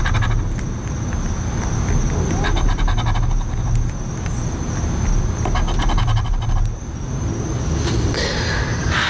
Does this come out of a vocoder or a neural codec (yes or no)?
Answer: no